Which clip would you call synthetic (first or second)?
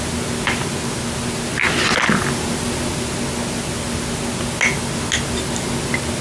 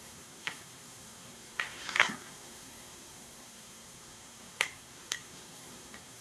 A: second